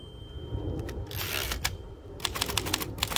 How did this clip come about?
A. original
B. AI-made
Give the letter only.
A